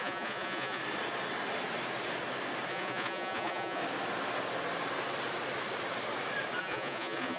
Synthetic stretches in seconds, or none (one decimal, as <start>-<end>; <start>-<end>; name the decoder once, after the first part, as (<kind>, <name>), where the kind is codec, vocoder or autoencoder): 0.0-0.8 (vocoder, Vocos); 2.7-3.8; 6.6-7.4